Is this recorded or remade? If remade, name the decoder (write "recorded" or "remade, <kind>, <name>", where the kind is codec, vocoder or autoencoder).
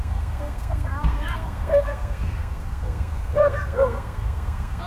remade, codec, SNAC